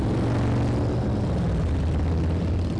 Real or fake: real